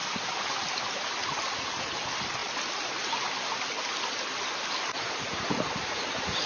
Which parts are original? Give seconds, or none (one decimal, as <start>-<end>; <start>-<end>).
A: 0.0-6.5